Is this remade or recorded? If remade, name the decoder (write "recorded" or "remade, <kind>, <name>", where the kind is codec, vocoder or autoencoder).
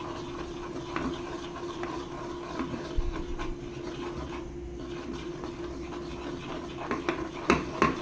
recorded